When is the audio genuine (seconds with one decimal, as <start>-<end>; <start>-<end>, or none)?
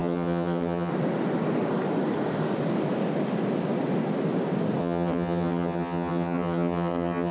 0.9-4.8